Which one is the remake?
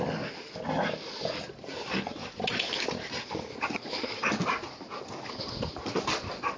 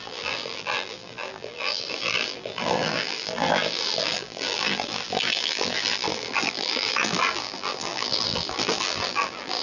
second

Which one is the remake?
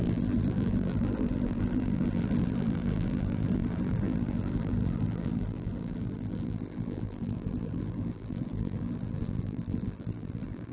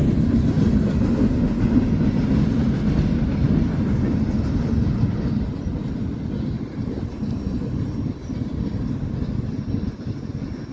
first